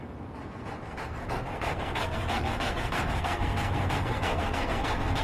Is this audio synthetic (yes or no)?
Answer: yes